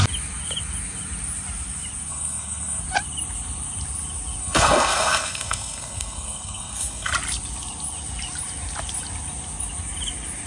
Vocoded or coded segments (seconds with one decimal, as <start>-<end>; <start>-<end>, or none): 2.1-2.8; 4.4-7.1